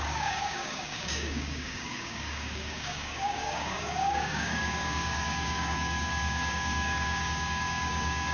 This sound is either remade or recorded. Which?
remade